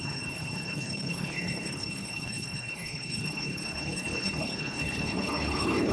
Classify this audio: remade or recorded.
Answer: remade